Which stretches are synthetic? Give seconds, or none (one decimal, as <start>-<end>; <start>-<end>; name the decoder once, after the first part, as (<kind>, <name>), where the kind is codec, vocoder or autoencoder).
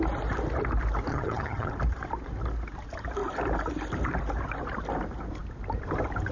1.1-1.7 (vocoder, HiFi-GAN)